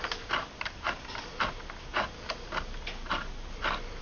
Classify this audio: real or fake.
real